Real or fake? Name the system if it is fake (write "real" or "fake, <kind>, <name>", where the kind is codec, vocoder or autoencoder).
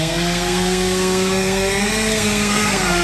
fake, codec, SNAC